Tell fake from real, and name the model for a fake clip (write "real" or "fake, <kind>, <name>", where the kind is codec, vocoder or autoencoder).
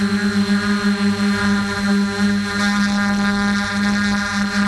real